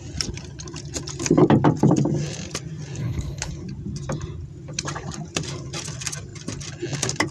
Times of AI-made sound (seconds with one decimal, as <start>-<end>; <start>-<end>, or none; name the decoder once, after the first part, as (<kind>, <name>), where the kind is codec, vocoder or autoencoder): 3.0-3.5 (codec, HILCodec)